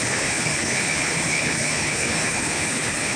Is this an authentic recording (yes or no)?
no